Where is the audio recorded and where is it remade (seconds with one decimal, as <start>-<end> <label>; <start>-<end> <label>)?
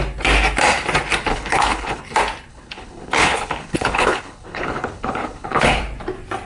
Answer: 0.0-1.3 recorded; 1.3-2.0 remade; 2.0-2.5 recorded; 2.5-5.8 remade; 5.8-6.5 recorded